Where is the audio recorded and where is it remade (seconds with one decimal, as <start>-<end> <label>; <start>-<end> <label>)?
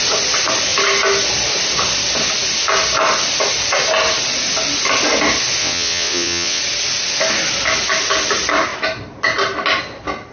0.0-5.6 recorded; 5.6-6.6 remade; 6.6-10.3 recorded